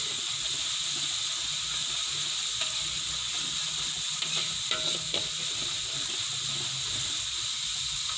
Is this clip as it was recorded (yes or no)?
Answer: yes